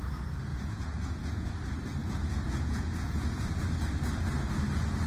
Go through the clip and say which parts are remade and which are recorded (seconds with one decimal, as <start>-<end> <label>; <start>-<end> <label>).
0.0-0.5 recorded; 0.5-1.5 remade; 1.5-2.0 recorded; 2.0-3.5 remade; 3.5-5.1 recorded